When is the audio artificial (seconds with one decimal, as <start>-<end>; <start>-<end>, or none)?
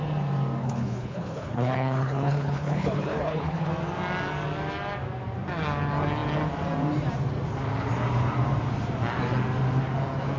0.6-3.7